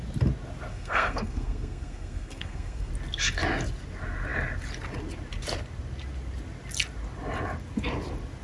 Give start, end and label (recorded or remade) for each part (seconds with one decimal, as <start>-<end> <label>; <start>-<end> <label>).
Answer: 0.0-0.7 recorded; 0.7-2.9 remade; 2.9-8.4 recorded